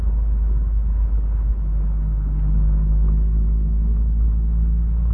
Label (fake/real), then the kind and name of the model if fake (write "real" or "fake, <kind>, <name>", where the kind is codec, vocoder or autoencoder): fake, codec, HILCodec